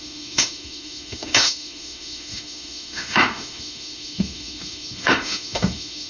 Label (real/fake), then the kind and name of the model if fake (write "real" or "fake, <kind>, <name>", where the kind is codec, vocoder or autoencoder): fake, autoencoder, DAC-VAE